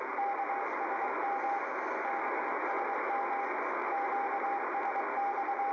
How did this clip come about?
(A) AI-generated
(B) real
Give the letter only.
B